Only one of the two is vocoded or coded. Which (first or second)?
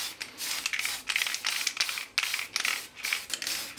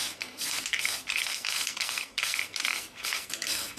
second